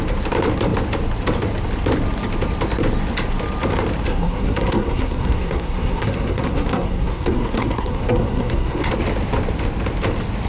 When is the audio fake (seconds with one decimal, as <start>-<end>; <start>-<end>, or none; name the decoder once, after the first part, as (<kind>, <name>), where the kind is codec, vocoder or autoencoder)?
4.1-8.9 (codec, SNAC)

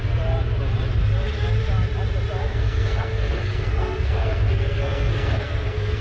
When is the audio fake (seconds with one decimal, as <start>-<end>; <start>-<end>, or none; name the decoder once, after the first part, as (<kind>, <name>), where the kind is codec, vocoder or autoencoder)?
2.4-6.0 (codec, SNAC)

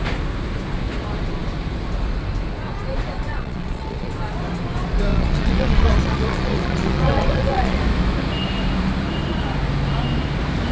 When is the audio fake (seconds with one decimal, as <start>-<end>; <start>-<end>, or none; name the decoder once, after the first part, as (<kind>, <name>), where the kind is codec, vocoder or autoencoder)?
3.3-4.1 (vocoder, Vocos); 5.1-7.8

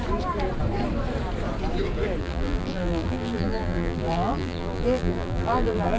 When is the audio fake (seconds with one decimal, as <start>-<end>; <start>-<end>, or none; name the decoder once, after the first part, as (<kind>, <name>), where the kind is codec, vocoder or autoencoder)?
2.2-6.0 (vocoder, BigVGAN v2)